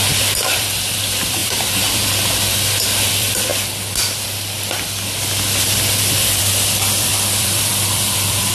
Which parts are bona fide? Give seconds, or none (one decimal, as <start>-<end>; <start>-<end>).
3.5-6.0